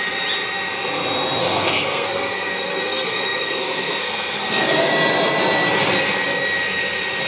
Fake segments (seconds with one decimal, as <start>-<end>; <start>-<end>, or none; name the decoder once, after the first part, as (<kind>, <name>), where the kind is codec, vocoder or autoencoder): 1.4-4.9 (codec, SNAC)